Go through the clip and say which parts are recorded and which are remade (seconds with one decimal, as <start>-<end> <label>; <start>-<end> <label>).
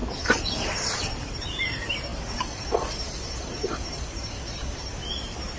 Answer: 0.0-5.6 recorded